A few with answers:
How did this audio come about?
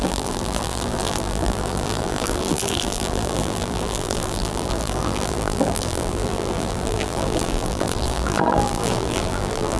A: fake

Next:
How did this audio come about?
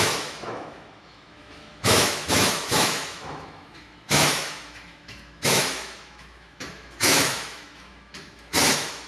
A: fake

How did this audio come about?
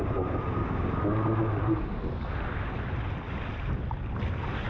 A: fake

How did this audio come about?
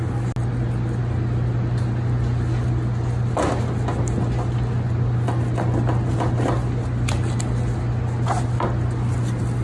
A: real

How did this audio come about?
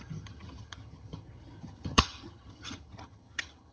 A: fake